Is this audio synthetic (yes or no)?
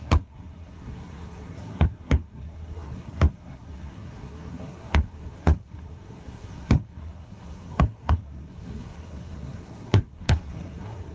yes